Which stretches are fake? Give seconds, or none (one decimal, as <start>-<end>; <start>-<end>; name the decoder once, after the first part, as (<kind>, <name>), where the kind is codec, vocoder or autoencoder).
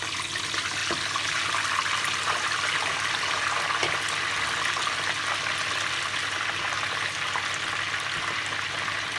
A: none